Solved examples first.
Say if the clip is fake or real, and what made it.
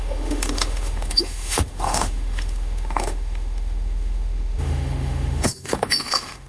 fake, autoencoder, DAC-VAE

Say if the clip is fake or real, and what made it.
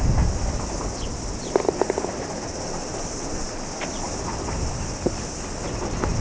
real